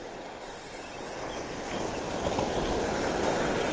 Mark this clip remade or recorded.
recorded